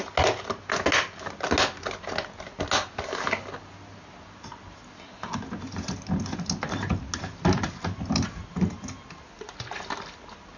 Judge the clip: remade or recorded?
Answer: recorded